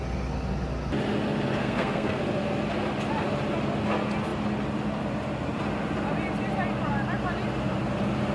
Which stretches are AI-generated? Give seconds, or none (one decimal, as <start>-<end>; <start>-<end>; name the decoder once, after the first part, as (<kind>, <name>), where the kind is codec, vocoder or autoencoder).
1.6-2.2 (codec, SNAC)